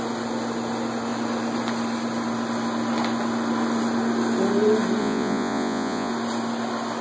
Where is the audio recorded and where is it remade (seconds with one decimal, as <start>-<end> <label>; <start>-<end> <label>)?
0.0-5.0 recorded; 5.0-6.1 remade; 6.1-7.0 recorded